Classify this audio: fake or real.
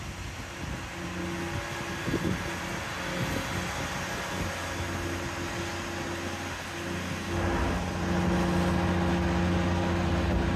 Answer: real